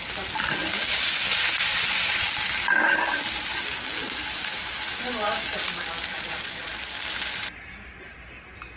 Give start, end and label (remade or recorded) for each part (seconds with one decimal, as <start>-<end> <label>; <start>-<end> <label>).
0.0-1.3 recorded; 1.3-2.3 remade; 2.3-6.1 recorded; 6.1-6.7 remade; 6.7-8.8 recorded